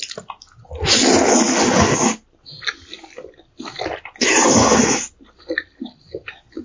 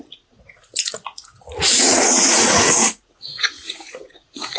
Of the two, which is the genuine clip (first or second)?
first